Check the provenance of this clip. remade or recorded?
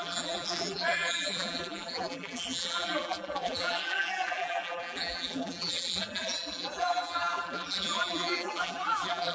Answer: remade